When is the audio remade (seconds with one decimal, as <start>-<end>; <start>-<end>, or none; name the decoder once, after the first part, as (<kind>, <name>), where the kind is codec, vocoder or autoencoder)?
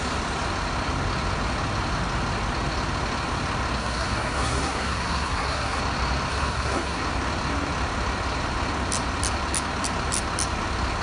3.8-5.8 (codec, SNAC); 6.3-7.0